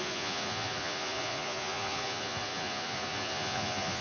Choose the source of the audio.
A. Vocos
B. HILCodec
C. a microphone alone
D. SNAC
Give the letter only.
A